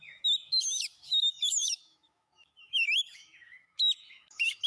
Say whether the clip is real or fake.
fake